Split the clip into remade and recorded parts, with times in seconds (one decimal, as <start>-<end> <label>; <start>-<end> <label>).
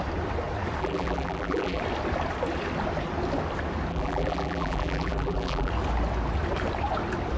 0.0-0.8 recorded; 0.8-1.8 remade; 1.8-3.9 recorded; 3.9-5.7 remade; 5.7-7.4 recorded